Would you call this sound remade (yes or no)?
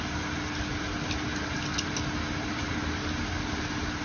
no